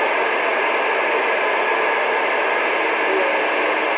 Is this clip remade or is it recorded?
recorded